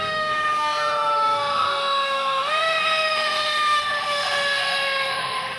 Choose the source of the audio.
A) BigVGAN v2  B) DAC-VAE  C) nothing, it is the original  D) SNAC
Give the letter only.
B